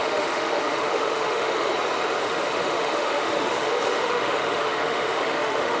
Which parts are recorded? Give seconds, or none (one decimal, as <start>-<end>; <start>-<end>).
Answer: 1.7-2.2

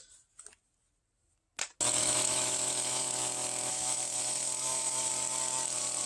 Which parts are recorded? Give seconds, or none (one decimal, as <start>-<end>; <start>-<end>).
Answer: 0.0-2.0; 5.1-6.1

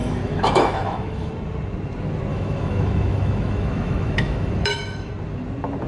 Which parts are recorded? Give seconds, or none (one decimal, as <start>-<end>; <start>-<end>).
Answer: 1.3-2.3; 5.1-5.9

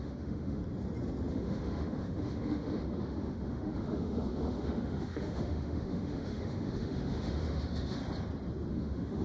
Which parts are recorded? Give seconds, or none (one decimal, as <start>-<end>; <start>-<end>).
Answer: 0.6-1.3; 8.0-8.7

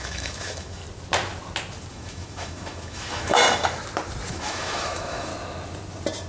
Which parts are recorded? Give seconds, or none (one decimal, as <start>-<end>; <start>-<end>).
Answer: 0.8-1.9; 3.4-4.3; 5.3-6.3

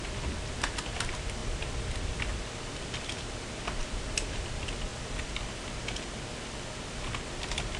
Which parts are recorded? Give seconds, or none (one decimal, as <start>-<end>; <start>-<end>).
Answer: 0.0-7.8